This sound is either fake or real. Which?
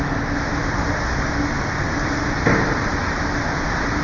real